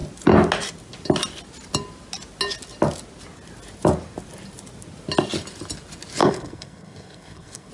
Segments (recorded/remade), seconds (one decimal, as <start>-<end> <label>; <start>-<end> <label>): 0.0-6.2 recorded; 6.2-7.7 remade